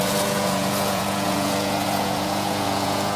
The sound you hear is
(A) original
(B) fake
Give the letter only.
B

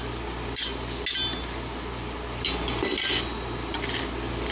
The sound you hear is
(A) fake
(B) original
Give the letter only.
B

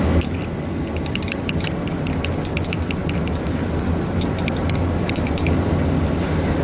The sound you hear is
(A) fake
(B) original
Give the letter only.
B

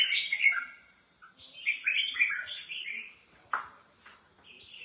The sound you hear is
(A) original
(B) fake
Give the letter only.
B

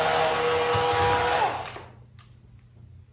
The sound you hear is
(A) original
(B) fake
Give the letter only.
A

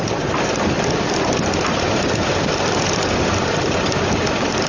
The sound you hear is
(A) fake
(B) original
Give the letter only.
B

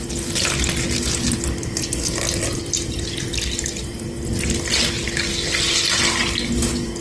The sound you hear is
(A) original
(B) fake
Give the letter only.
A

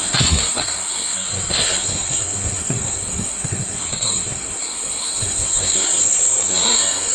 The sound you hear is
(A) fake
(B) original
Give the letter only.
A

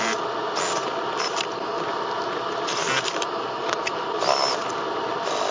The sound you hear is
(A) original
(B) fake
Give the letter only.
A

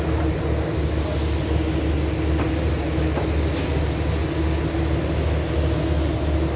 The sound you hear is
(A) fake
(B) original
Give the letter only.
B